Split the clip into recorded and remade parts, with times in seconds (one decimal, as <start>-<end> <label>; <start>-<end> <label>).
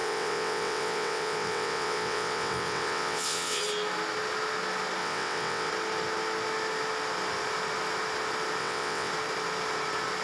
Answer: 0.0-3.6 remade; 3.6-5.0 recorded; 5.0-5.7 remade; 5.7-8.6 recorded; 8.6-9.1 remade; 9.1-10.2 recorded